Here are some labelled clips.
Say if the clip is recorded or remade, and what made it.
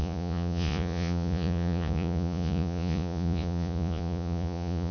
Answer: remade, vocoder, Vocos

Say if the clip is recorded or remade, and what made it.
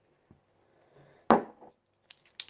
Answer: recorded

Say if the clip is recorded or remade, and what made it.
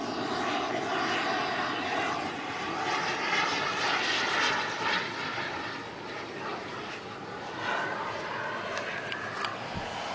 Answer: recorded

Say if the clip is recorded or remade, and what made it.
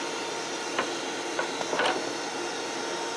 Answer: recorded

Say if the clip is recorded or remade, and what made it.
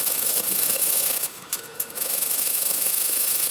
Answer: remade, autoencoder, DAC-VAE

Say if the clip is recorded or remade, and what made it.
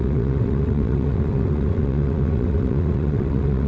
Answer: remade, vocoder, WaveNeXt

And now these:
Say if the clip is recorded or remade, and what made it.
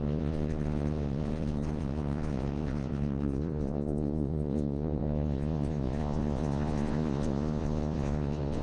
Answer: remade, vocoder, Vocos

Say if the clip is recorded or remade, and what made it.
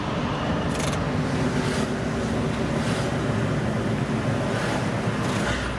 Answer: recorded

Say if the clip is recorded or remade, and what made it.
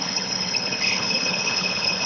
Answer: remade, codec, HILCodec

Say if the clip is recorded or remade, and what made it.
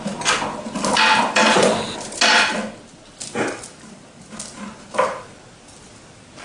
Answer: recorded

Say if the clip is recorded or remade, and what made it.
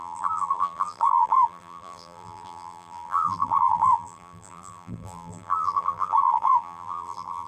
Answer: remade, vocoder, BigVGAN v2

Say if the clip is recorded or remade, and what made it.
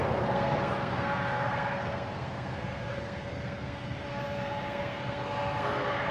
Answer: remade, codec, SNAC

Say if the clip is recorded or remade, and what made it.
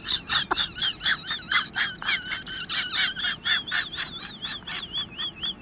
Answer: remade, vocoder, BigVGAN v2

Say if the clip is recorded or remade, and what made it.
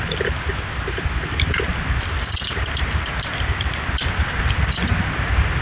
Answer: recorded